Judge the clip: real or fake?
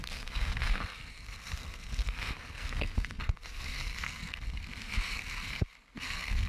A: fake